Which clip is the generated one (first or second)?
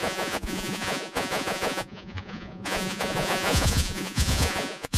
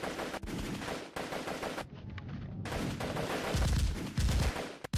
first